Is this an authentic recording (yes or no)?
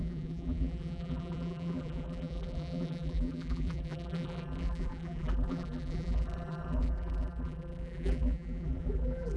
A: no